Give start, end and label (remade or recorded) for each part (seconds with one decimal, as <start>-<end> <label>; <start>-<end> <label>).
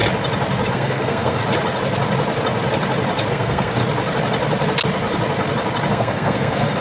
0.0-0.7 recorded; 0.7-1.4 remade; 1.4-3.3 recorded; 3.3-3.8 remade; 3.8-5.9 recorded; 5.9-6.8 remade